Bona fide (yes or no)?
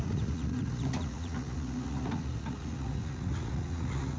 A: no